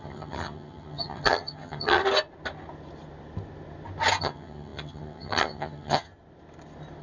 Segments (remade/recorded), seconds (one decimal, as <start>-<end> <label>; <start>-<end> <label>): 0.0-2.0 remade; 2.0-4.2 recorded; 4.2-6.1 remade; 6.1-7.0 recorded

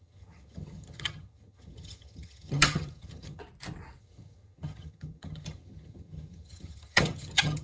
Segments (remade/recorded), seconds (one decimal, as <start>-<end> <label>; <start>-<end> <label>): 0.0-3.4 remade; 3.4-4.0 recorded; 4.0-7.6 remade

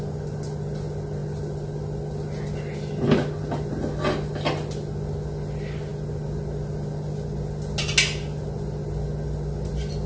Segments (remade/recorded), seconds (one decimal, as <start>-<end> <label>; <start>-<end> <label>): 0.0-10.1 recorded

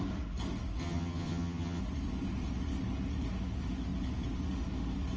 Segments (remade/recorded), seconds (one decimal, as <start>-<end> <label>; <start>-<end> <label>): 0.0-0.8 recorded; 0.8-1.8 remade; 1.8-5.2 recorded

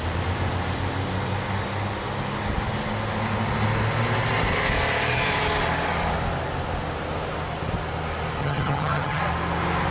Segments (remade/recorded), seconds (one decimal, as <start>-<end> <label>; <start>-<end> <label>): 0.0-8.4 recorded; 8.4-9.2 remade; 9.2-9.9 recorded

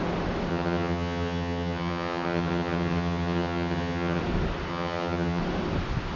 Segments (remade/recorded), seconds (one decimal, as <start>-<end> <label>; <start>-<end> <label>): 0.0-0.5 recorded; 0.5-4.2 remade; 4.2-4.7 recorded; 4.7-5.4 remade; 5.4-6.2 recorded